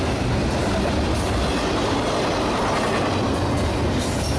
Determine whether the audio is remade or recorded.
recorded